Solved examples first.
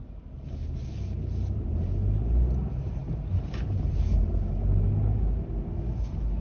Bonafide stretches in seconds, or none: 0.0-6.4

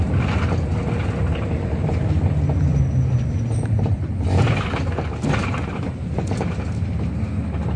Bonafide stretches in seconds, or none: 0.0-7.8

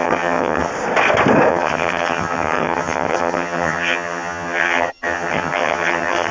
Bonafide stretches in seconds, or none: 0.7-1.5

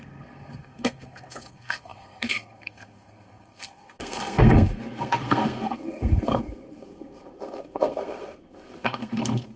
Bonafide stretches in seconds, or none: none

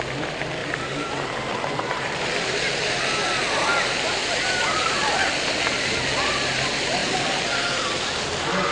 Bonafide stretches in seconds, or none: 0.0-0.6; 2.5-3.7; 5.5-8.7

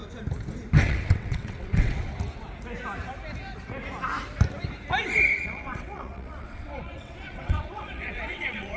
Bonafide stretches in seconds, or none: 0.0-0.8; 2.1-5.4